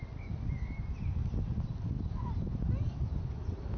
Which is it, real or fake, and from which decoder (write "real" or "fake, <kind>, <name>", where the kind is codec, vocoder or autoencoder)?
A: real